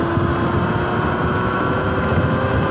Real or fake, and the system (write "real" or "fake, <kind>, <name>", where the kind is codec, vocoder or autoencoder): real